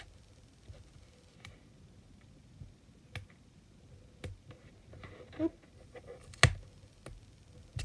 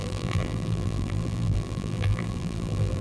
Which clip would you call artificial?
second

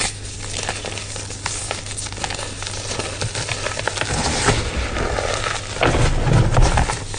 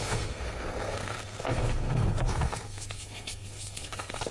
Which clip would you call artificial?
second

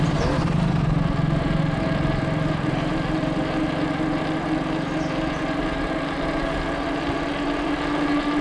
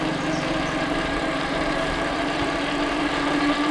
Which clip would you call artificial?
second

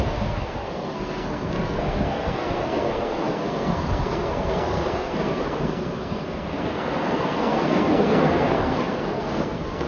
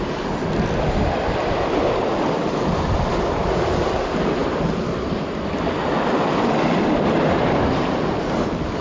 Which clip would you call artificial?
first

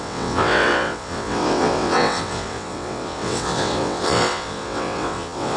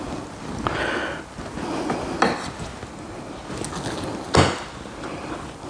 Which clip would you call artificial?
first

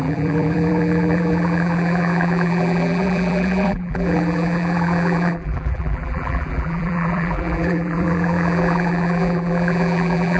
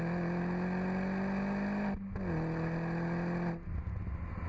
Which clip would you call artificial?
first